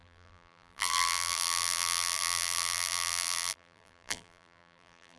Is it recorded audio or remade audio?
remade